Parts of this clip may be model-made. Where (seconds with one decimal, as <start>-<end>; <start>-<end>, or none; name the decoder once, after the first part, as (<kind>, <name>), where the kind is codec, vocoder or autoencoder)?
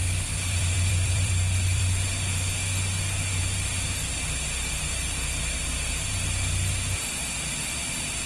0.0-1.8 (vocoder, BigVGAN v2)